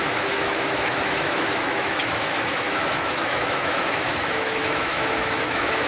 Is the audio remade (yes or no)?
yes